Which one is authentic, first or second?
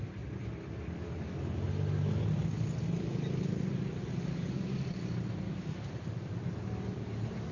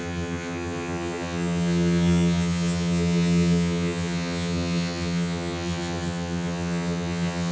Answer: first